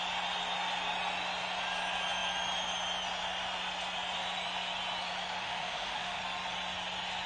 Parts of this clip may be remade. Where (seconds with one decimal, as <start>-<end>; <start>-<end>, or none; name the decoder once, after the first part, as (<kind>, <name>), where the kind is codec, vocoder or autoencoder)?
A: 5.4-6.2 (autoencoder, DAC-VAE)